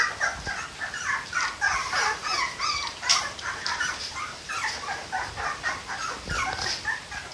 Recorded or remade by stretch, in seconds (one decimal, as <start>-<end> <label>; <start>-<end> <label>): 0.0-1.8 recorded; 1.8-5.3 remade; 5.3-7.3 recorded